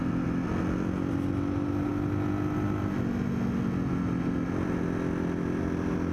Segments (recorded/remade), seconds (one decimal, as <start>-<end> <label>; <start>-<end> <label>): 0.0-6.1 recorded